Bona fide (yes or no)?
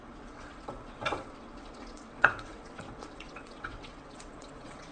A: no